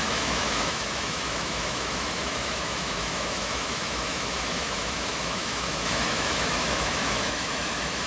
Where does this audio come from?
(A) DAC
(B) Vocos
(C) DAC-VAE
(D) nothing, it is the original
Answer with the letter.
C